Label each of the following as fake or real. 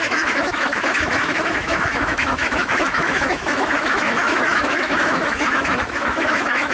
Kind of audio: fake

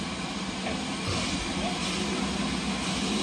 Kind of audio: real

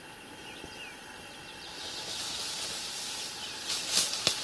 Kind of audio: real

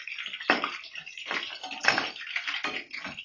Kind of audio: real